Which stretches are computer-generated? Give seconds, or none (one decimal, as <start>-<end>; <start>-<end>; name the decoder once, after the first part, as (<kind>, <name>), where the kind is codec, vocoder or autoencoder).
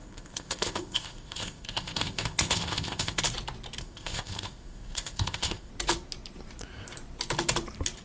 0.0-3.2 (codec, ZipCodec); 3.8-5.7